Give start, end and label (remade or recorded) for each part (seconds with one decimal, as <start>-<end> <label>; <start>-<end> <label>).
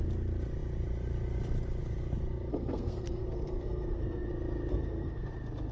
0.0-2.5 recorded; 2.5-4.3 remade; 4.3-4.7 recorded; 4.7-5.3 remade; 5.3-5.7 recorded